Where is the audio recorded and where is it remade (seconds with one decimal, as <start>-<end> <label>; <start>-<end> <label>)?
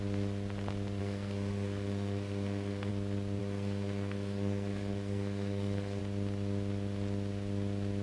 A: 0.0-1.0 recorded; 1.0-2.9 remade; 2.9-3.4 recorded; 3.4-6.0 remade; 6.0-8.0 recorded